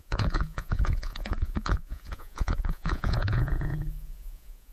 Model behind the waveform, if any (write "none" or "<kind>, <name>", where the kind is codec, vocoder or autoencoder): vocoder, Vocos